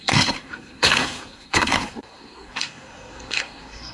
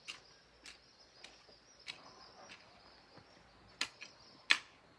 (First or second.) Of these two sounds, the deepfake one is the first